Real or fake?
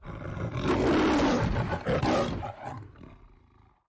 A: real